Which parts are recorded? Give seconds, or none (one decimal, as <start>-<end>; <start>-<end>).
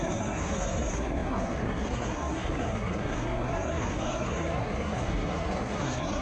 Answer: none